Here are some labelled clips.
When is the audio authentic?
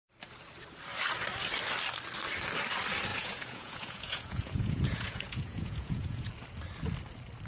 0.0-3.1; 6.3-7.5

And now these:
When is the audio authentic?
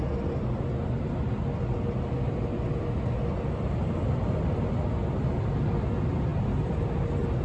0.0-7.4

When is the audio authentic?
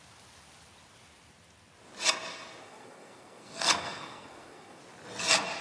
0.0-2.6; 4.8-5.6